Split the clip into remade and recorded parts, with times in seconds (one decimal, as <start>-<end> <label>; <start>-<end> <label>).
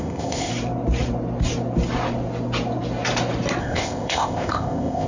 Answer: 0.0-0.5 remade; 0.5-3.6 recorded; 3.6-5.1 remade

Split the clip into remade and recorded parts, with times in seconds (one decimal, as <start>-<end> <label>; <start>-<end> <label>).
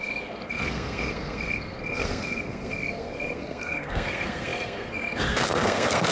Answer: 0.0-6.1 remade